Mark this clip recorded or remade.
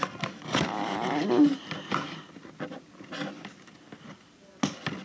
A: recorded